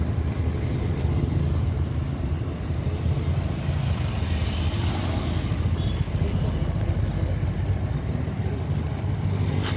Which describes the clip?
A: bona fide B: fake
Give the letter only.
A